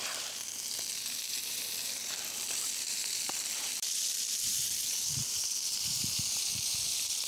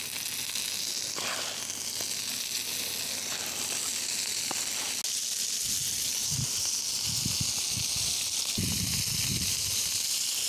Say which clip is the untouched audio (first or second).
second